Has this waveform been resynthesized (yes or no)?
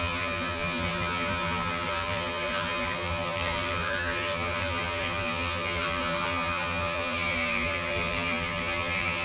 yes